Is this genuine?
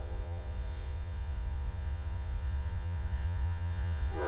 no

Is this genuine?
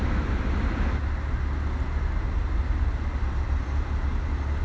yes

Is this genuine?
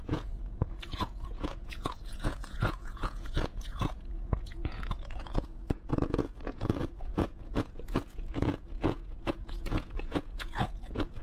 no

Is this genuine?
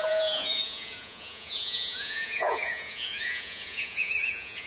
no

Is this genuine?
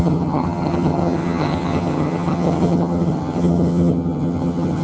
no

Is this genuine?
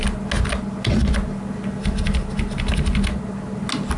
yes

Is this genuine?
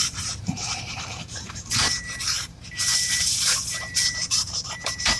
no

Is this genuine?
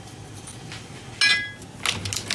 yes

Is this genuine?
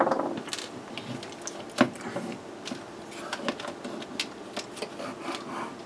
yes